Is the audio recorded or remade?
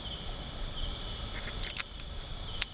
recorded